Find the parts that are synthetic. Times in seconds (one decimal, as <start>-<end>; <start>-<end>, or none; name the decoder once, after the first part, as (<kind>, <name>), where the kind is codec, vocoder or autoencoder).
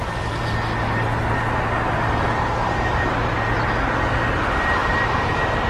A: 2.6-3.3 (vocoder, BigVGAN v2); 4.8-5.3